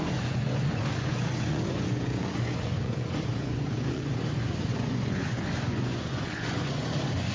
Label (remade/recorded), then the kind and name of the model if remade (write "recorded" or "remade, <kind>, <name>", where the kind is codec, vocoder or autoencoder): remade, vocoder, Vocos